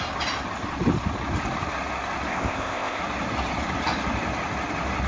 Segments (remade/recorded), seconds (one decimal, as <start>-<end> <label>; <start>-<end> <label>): 0.0-2.3 recorded; 2.3-3.0 remade; 3.0-5.1 recorded